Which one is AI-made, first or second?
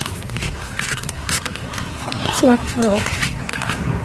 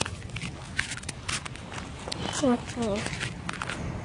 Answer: first